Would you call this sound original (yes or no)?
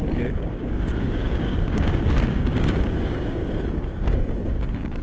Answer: no